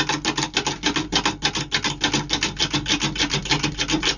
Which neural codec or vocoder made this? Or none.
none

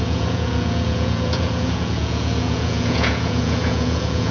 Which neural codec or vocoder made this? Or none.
vocoder, Vocos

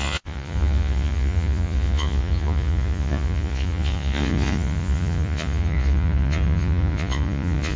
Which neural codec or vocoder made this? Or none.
vocoder, Vocos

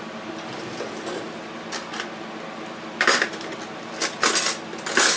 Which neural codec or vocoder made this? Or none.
none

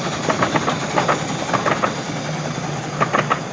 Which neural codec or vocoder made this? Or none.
none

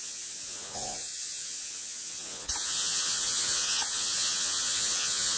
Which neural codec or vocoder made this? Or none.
vocoder, Vocos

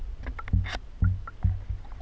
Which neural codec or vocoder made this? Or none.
none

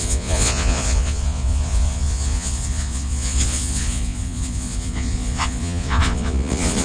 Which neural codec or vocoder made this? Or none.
vocoder, Vocos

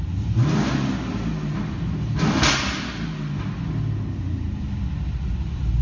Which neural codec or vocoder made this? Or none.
none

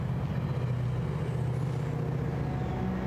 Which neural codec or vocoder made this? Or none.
none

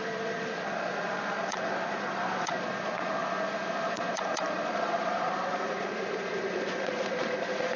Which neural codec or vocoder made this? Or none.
vocoder, Vocos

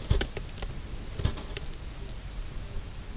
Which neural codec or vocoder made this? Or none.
none